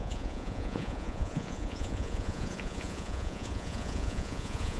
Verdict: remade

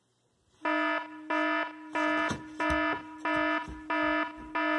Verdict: recorded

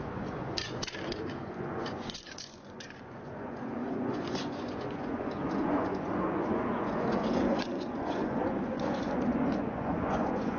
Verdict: remade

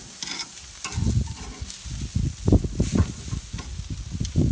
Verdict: recorded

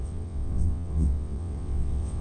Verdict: remade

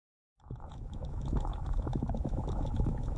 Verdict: remade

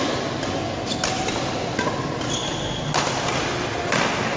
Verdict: recorded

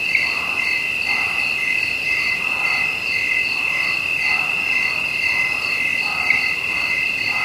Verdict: recorded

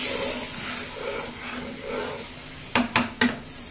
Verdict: recorded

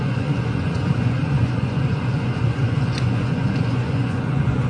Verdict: remade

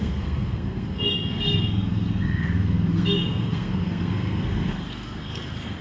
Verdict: remade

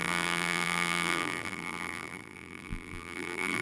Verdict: remade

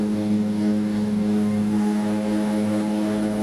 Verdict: remade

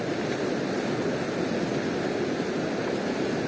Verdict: recorded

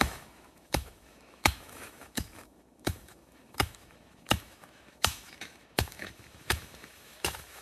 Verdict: remade